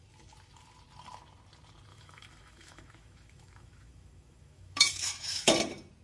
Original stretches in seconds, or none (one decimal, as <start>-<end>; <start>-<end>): 0.0-1.9; 5.5-6.0